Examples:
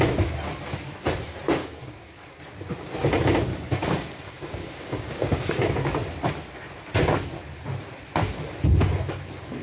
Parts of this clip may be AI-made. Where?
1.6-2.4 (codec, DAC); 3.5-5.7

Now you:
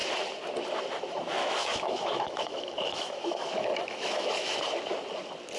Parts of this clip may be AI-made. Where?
1.4-4.6 (autoencoder, DAC-VAE)

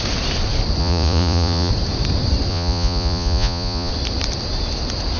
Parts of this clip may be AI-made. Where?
0.8-1.7 (vocoder, Vocos); 2.5-3.9

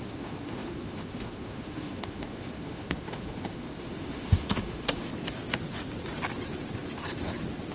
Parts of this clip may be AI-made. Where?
0.0-5.1 (autoencoder, DAC-VAE)

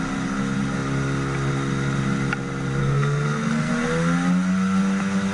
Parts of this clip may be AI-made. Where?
2.8-3.7 (codec, SNAC)

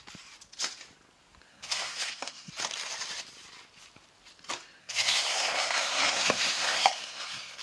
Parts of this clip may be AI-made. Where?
1.5-2.5 (codec, SNAC); 4.8-7.6

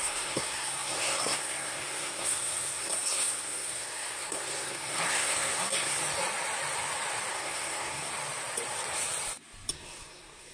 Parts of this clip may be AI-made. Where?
0.0-6.0 (codec, SNAC); 7.3-8.1; 9.7-10.5

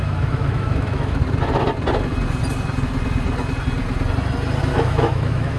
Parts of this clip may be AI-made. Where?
0.0-1.2 (autoencoder, DAC-VAE); 4.6-5.6